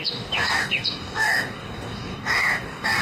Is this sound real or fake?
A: fake